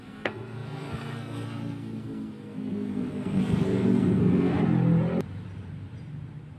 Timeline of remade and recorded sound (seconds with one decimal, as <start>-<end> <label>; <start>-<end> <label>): 0.0-4.5 remade; 4.5-6.6 recorded